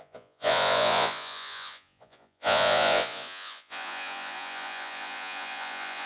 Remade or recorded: remade